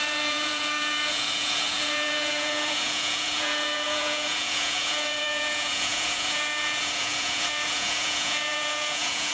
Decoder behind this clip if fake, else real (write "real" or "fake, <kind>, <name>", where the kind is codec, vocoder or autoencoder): fake, vocoder, Vocos